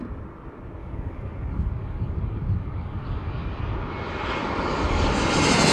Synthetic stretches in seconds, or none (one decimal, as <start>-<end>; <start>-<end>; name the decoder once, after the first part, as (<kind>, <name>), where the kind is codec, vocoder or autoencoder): 0.8-3.6 (codec, DAC); 4.4-5.1